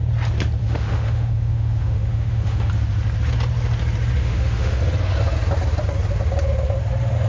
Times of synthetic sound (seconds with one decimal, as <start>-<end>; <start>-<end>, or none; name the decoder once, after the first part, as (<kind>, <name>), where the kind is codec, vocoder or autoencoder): 0.6-2.7 (autoencoder, DAC-VAE); 4.2-4.8